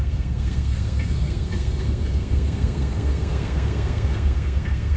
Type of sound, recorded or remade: remade